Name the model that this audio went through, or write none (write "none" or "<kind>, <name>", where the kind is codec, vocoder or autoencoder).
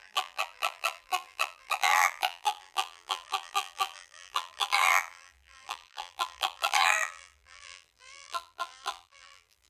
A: vocoder, BigVGAN v2